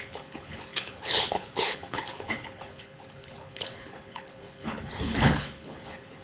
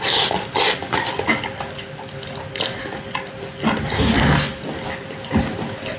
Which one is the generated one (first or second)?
first